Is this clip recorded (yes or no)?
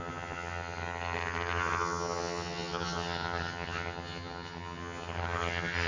no